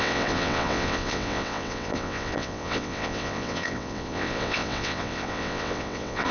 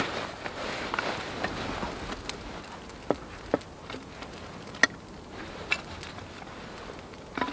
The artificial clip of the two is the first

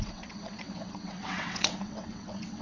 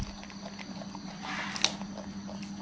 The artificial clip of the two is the first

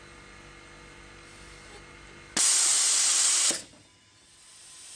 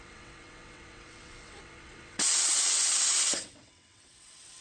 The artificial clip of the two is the second